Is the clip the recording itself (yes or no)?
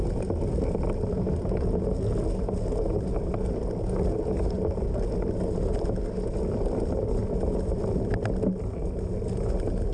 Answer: yes